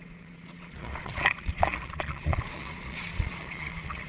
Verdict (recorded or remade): remade